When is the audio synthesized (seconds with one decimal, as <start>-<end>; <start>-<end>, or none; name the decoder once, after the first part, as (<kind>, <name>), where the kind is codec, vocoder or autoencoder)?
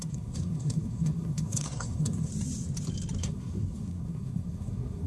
0.0-2.3 (codec, SNAC); 3.2-5.1